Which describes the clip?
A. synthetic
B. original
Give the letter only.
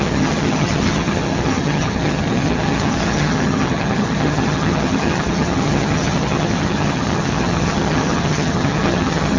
A